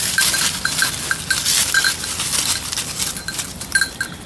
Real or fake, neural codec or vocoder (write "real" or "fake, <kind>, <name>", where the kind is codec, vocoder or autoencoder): real